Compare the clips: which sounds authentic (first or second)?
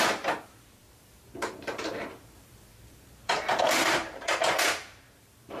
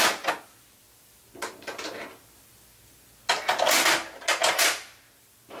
second